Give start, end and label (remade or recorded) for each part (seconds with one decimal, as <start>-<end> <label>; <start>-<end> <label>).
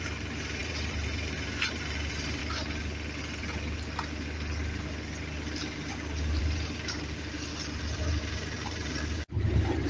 0.0-2.4 remade; 2.4-6.4 recorded; 6.4-9.9 remade